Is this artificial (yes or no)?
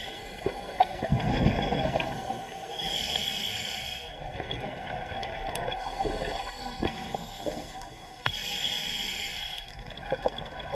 yes